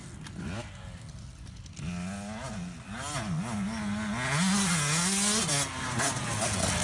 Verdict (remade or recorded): recorded